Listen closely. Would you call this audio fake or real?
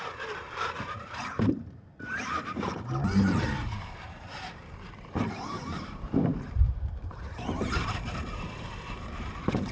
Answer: fake